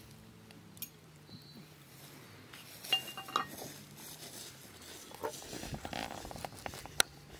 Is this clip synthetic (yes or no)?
no